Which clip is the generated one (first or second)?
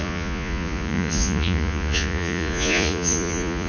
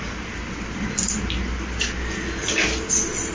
first